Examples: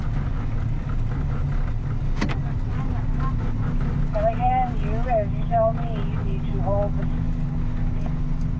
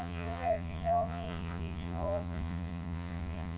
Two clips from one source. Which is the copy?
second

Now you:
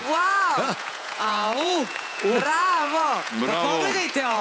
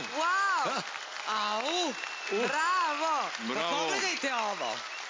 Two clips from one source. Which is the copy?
first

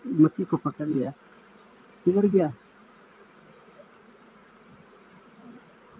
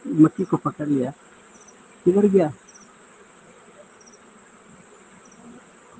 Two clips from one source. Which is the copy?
first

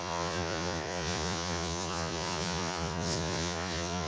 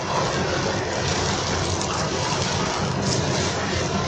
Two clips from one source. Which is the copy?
first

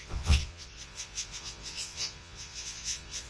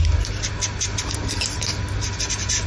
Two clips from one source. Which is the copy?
first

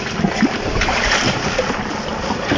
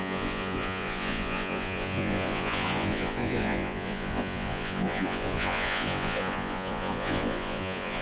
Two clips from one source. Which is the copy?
second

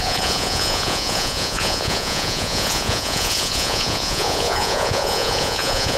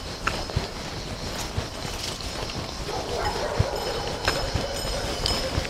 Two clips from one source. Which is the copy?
first